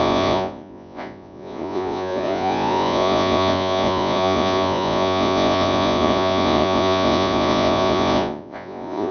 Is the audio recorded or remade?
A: remade